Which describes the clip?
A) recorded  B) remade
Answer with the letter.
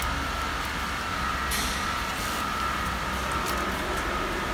A